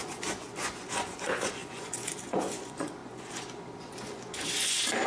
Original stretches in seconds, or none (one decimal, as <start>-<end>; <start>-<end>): none

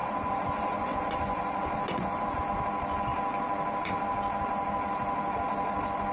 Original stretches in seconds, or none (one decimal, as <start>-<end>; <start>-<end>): 2.4-6.1

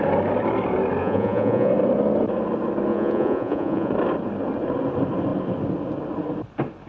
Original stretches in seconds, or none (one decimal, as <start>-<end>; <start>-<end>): 0.0-1.0; 1.7-2.9; 3.9-6.9

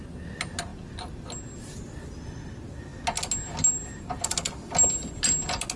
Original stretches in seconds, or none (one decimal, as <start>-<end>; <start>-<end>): 0.0-5.8

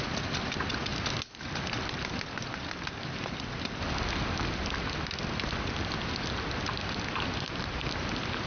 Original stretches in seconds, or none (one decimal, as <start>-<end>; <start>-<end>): 0.0-8.5

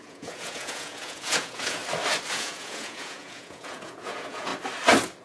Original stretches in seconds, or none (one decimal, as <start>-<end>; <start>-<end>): 1.8-2.3; 4.5-5.2